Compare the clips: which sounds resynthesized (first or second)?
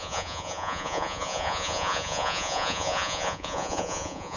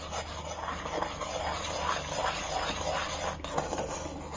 first